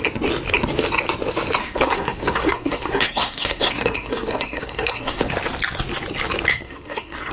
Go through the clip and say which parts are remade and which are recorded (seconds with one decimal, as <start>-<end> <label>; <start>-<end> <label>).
0.0-1.6 recorded; 1.6-5.3 remade; 5.3-6.5 recorded; 6.5-7.3 remade